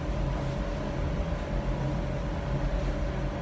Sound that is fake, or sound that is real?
real